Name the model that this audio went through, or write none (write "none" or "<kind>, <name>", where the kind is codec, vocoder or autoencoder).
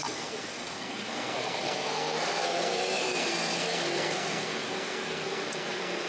codec, SNAC